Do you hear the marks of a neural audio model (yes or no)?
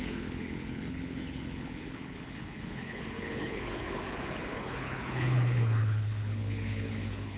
yes